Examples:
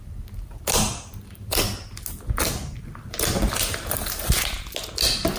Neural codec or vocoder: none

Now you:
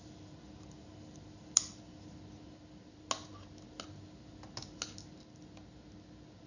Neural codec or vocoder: none